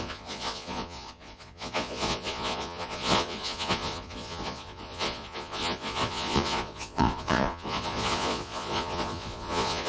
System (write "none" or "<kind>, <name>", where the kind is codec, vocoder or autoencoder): vocoder, Vocos